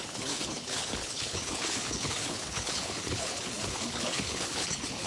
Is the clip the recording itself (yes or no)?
no